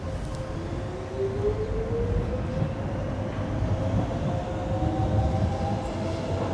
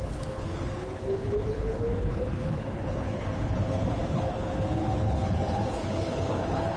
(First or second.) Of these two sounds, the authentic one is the first